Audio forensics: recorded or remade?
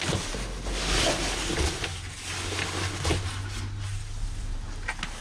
recorded